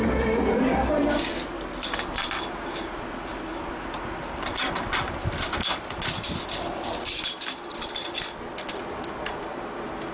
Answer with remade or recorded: recorded